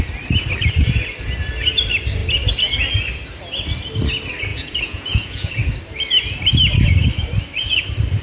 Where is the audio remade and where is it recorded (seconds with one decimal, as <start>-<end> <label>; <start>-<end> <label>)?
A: 0.0-4.5 recorded; 4.5-5.5 remade; 5.5-8.2 recorded